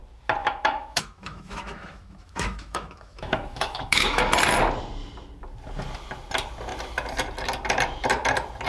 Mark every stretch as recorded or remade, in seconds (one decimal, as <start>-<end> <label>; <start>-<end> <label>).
0.0-0.4 recorded; 0.4-4.2 remade; 4.2-8.7 recorded